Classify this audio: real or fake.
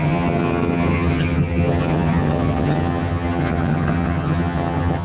fake